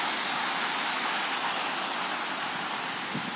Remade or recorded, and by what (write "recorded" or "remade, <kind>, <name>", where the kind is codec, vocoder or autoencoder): recorded